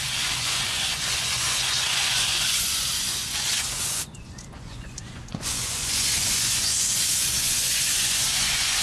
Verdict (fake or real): fake